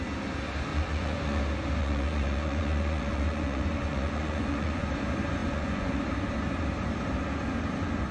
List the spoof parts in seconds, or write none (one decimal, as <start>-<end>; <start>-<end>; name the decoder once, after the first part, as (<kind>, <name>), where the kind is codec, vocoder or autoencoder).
0.7-1.4 (vocoder, Vocos); 1.8-4.9; 5.4-6.0